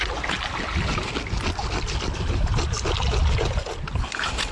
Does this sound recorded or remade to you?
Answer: recorded